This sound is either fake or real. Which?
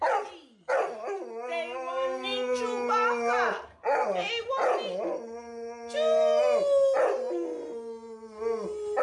real